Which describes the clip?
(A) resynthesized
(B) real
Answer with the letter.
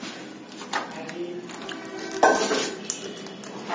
B